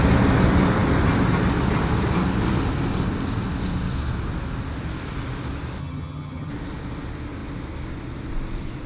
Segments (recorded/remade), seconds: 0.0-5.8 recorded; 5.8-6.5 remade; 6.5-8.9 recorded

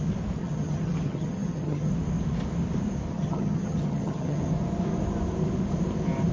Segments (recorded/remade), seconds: 0.0-0.4 recorded; 0.4-1.9 remade; 1.9-3.1 recorded; 3.1-4.4 remade; 4.4-6.3 recorded